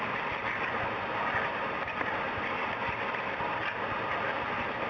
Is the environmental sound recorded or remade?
remade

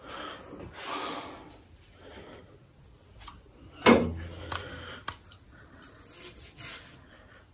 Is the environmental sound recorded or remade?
recorded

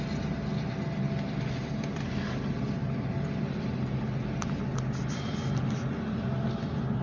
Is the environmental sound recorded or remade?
recorded